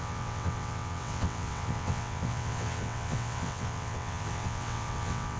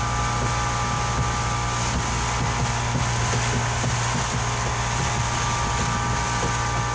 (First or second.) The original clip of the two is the second